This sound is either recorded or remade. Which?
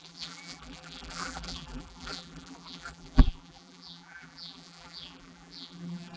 remade